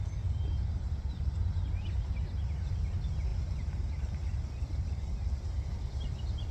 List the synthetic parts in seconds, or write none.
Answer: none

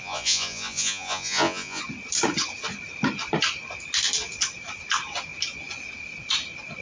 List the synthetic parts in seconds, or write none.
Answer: 0.0-1.8 (vocoder, Vocos)

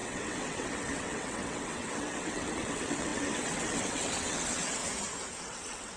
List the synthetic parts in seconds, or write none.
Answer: 0.0-4.8 (vocoder, WaveNeXt); 5.4-6.0

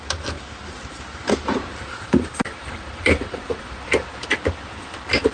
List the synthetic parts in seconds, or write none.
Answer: 1.7-4.2 (vocoder, BigVGAN v2)

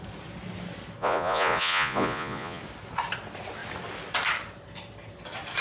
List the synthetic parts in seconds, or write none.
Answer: 1.0-2.6 (vocoder, Vocos)

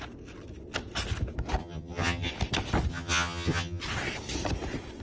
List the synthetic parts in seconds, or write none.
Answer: 1.6-2.3 (vocoder, HiFi-GAN); 2.9-3.8

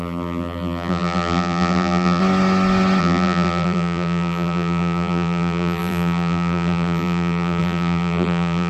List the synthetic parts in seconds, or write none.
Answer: 0.0-2.2 (vocoder, BigVGAN v2); 3.0-8.7